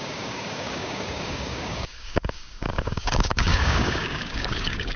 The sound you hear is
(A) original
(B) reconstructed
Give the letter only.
B